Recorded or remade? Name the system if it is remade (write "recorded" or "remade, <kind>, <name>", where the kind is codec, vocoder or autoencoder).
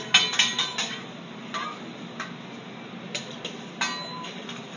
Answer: recorded